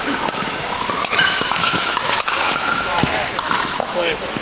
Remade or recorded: remade